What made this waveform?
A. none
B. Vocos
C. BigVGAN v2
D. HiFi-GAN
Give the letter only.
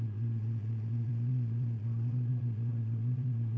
B